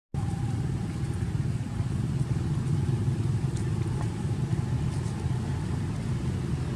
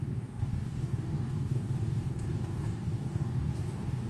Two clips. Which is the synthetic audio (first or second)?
second